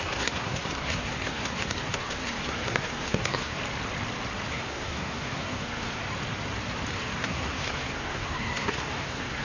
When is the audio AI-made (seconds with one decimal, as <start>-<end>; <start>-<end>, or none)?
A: 0.0-3.6; 4.5-6.0; 6.9-9.4